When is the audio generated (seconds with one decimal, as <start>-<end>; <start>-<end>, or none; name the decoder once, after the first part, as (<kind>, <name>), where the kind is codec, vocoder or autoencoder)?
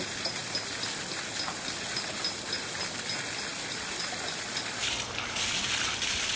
none